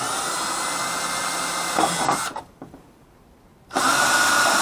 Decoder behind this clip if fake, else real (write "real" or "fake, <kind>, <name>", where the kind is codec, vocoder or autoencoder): real